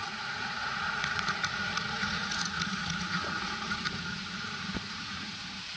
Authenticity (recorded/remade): remade